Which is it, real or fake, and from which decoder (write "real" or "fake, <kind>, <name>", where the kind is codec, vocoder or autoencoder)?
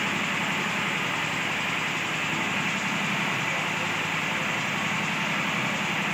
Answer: real